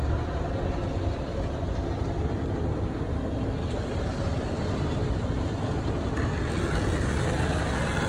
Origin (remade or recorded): recorded